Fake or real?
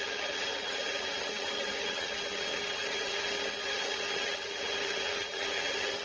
fake